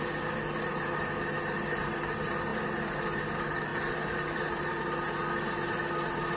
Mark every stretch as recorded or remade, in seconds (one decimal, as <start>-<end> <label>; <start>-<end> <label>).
0.0-2.5 recorded; 2.5-3.0 remade; 3.0-3.7 recorded; 3.7-4.7 remade; 4.7-6.4 recorded